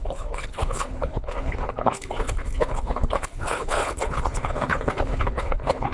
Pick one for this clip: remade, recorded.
remade